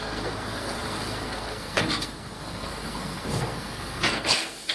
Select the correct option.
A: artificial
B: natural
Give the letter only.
A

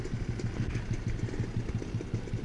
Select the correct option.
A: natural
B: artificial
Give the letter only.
A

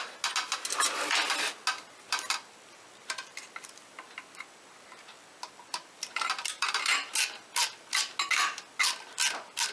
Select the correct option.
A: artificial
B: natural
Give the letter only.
B